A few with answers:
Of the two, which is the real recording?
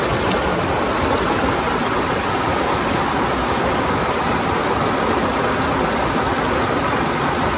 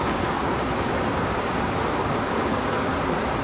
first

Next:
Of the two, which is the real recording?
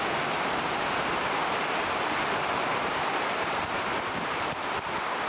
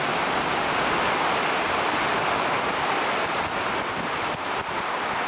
second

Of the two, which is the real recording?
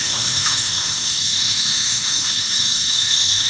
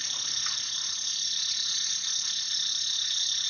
second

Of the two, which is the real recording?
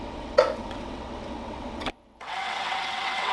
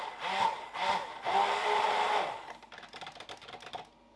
second